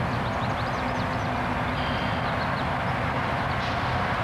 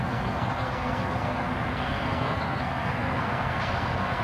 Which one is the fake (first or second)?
second